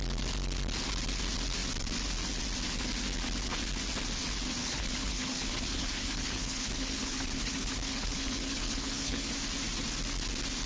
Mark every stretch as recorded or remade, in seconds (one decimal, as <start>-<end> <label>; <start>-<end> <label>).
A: 0.0-4.6 recorded; 4.6-9.3 remade; 9.3-10.7 recorded